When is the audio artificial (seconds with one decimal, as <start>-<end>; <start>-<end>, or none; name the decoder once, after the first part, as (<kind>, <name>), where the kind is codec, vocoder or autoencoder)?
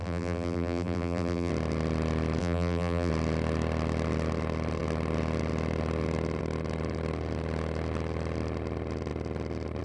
0.0-1.5 (vocoder, BigVGAN v2); 2.4-3.1